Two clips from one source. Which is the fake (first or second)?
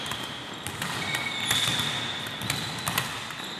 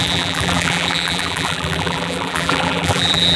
second